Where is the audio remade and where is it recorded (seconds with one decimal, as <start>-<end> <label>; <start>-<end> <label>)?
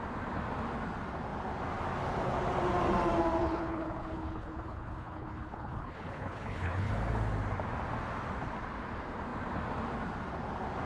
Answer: 0.0-3.4 recorded; 3.4-6.9 remade; 6.9-10.9 recorded